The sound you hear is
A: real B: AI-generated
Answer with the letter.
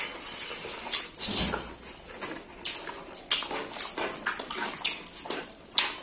A